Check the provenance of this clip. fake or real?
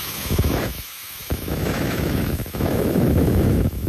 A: fake